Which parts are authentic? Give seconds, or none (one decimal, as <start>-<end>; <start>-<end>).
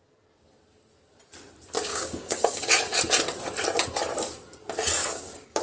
0.0-1.9; 2.7-5.0